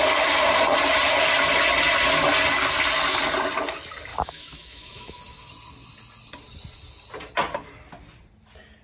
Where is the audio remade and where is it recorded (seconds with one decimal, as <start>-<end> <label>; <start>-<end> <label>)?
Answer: 0.0-4.1 recorded; 4.1-5.5 remade; 5.5-8.8 recorded